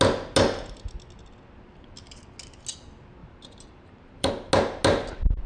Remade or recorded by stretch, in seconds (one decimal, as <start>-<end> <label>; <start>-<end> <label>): 0.0-3.2 recorded; 3.2-4.5 remade; 4.5-5.5 recorded